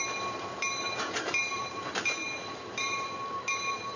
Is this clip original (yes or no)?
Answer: no